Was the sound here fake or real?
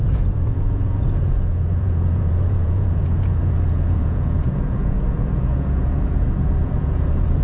fake